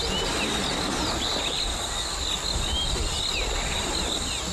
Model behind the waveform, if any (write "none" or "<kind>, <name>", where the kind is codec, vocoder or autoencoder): none